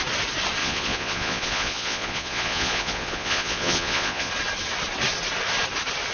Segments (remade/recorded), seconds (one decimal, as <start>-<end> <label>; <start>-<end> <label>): 0.0-0.6 recorded; 0.6-4.3 remade; 4.3-6.1 recorded